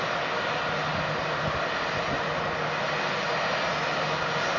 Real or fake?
real